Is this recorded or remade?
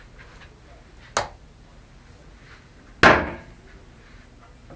recorded